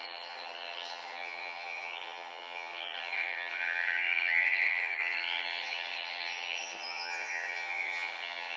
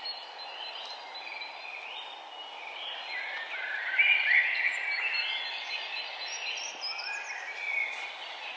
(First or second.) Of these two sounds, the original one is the second